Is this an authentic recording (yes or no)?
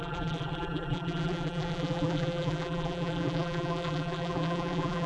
no